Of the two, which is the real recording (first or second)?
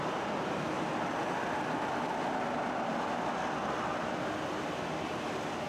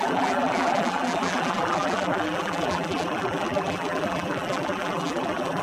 first